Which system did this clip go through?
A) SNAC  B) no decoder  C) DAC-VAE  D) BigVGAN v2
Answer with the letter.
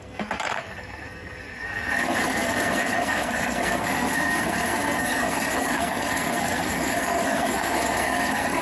A